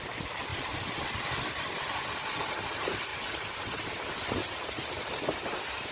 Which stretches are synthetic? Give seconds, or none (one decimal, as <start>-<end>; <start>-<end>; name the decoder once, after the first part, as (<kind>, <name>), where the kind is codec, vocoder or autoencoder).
0.0-5.9 (vocoder, BigVGAN v2)